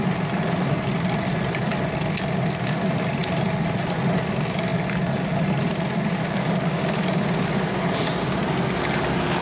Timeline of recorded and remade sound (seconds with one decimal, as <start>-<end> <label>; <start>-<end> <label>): 0.0-9.4 recorded